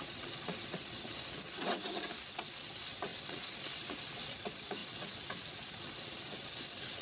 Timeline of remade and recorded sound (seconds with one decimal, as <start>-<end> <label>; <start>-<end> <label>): 0.0-7.0 remade